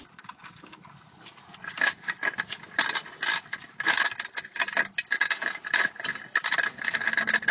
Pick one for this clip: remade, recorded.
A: recorded